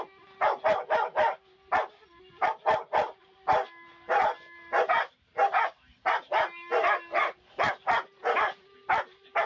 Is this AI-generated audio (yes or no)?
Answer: no